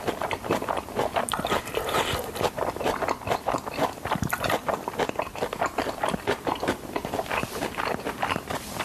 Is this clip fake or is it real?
fake